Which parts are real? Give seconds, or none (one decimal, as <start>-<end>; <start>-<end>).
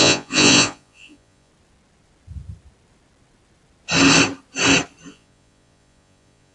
1.5-5.1